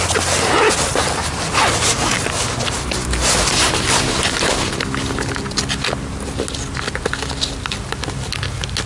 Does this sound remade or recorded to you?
recorded